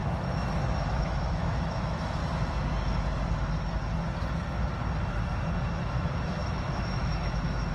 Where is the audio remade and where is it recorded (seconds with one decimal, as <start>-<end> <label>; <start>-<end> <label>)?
0.0-2.2 remade; 2.2-5.8 recorded; 5.8-7.7 remade